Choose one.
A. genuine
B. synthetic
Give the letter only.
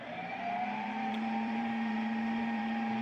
B